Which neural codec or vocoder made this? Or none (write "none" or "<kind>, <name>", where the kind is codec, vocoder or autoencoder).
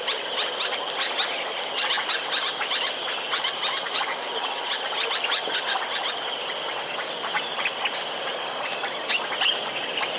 none